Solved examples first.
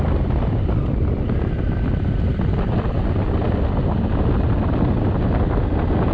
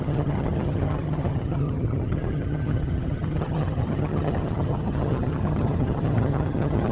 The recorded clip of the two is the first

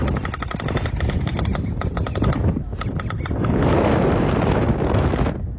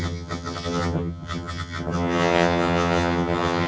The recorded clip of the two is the first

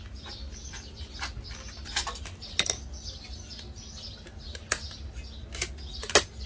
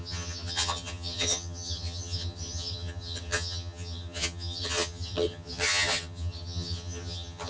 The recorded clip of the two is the first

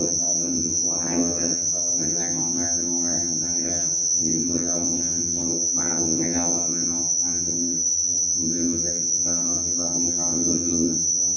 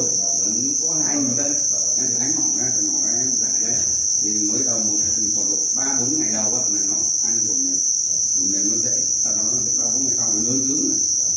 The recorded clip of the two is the second